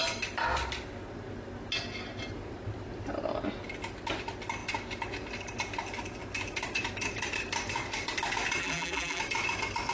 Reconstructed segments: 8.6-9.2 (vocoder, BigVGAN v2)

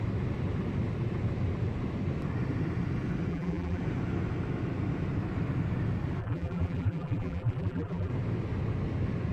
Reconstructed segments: 3.3-3.8 (vocoder, BigVGAN v2); 6.2-8.1

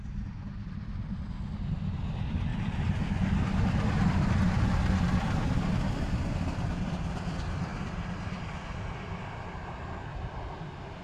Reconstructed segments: none

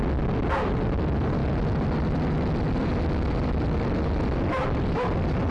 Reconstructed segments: none

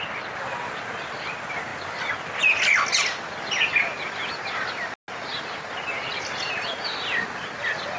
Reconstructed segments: none